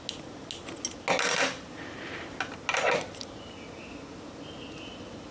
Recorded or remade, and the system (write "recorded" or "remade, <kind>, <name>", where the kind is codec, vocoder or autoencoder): recorded